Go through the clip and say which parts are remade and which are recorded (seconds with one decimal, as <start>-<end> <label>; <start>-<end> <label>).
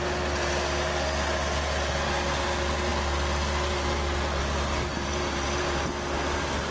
0.0-6.7 recorded